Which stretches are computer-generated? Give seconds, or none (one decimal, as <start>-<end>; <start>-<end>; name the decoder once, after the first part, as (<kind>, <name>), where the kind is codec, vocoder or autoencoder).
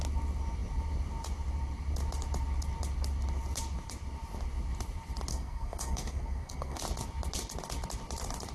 5.3-6.8 (codec, SNAC)